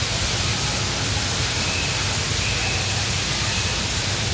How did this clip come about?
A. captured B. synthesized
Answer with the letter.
A